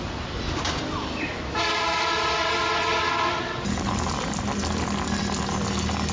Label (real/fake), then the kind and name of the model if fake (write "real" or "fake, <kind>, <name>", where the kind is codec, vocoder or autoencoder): real